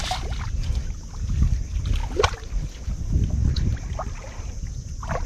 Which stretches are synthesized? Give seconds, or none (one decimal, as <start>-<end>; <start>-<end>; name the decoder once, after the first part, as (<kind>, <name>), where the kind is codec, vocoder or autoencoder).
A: 0.8-1.4 (vocoder, BigVGAN v2); 3.4-4.6